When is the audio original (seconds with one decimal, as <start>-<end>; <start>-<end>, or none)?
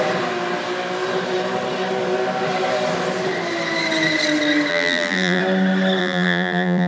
0.0-4.7; 5.4-6.0